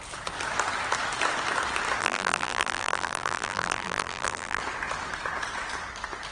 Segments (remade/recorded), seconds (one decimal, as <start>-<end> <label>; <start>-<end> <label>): 0.0-2.0 recorded; 2.0-4.6 remade; 4.6-6.3 recorded